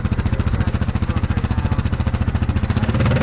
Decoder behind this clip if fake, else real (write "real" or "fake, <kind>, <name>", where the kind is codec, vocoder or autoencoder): real